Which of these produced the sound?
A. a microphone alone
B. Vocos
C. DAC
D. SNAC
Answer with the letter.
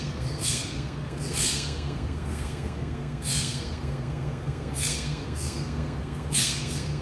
D